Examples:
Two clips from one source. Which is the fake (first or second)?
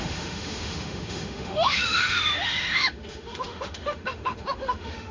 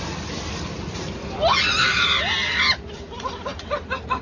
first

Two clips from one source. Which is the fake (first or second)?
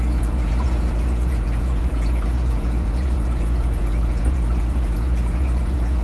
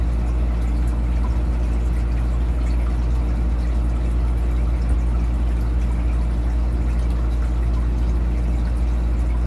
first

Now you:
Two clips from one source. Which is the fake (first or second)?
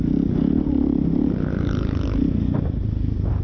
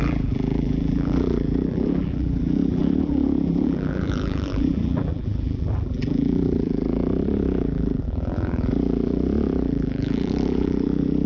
second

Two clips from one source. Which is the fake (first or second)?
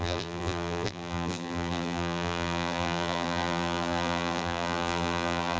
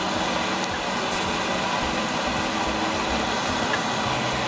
first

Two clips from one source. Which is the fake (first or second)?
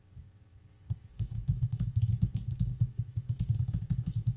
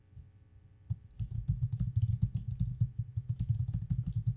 first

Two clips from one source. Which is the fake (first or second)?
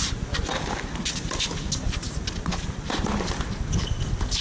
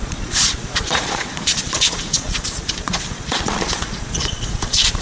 second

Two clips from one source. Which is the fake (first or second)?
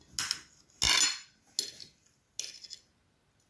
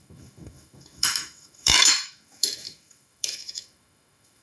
second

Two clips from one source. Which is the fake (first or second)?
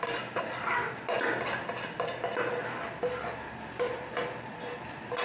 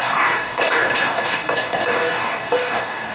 second